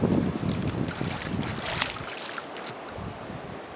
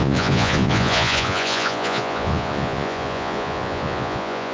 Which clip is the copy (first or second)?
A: second